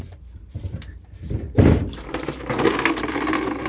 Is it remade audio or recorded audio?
remade